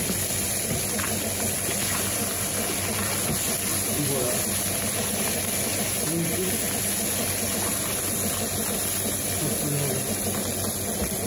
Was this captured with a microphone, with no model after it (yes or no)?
yes